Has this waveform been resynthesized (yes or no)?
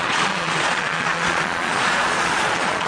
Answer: yes